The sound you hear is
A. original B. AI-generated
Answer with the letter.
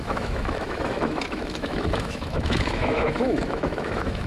B